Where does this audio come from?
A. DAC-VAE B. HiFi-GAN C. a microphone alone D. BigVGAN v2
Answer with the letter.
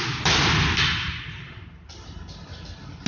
C